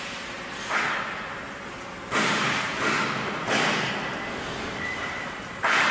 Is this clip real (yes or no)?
yes